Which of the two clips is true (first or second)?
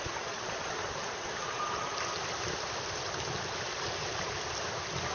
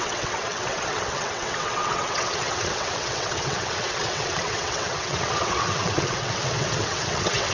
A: first